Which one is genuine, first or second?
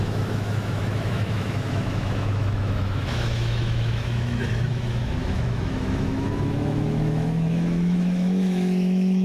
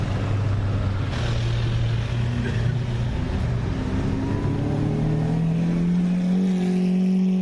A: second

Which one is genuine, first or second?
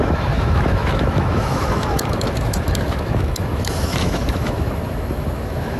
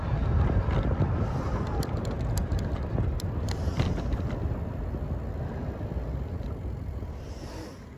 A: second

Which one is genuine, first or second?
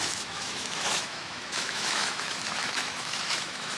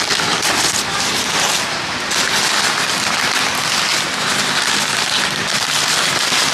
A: second